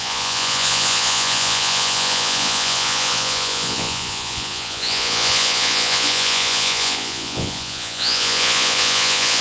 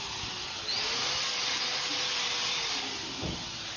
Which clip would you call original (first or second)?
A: second